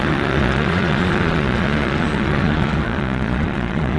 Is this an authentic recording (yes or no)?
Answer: no